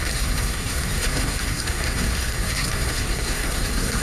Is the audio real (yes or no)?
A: no